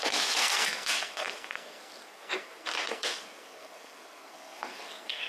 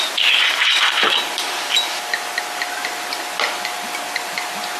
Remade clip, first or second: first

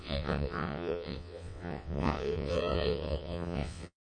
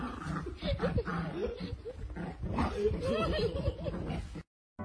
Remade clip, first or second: first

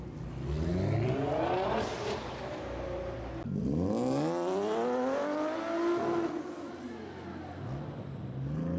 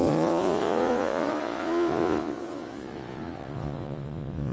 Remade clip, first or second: second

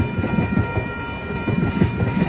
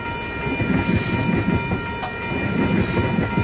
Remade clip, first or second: first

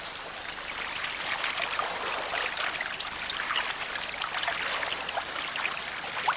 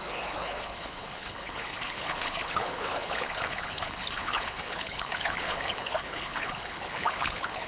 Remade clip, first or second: second